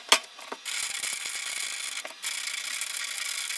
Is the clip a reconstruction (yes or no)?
no